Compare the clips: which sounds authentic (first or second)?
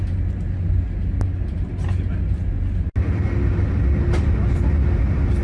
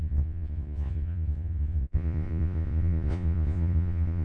first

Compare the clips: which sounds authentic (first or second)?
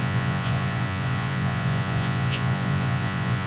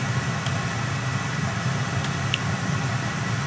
second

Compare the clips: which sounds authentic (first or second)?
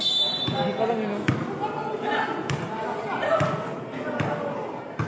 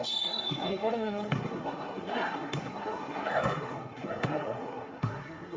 first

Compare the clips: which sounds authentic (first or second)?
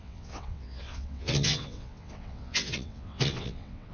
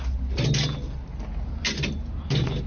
second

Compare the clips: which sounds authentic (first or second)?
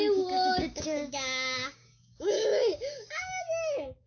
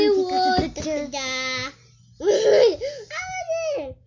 second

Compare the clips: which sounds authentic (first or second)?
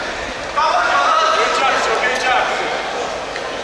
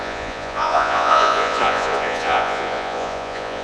first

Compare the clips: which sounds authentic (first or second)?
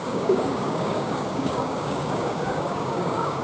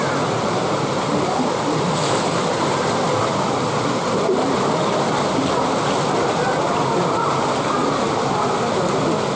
second